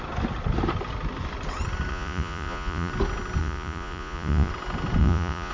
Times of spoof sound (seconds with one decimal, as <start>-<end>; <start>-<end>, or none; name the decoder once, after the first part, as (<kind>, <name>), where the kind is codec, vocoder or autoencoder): 1.9-2.9 (vocoder, Vocos); 3.4-4.5; 5.0-5.5